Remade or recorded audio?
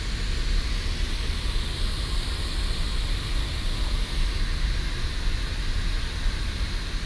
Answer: recorded